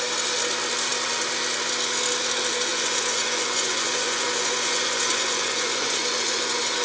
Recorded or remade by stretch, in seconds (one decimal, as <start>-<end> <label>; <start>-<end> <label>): 0.0-2.7 recorded; 2.7-6.8 remade